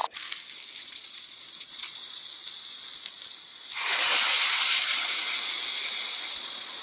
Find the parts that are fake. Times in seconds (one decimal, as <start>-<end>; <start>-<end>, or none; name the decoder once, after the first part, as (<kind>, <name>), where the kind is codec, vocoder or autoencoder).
0.8-2.2 (vocoder, Vocos); 6.3-6.8